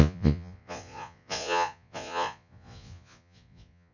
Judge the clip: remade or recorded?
remade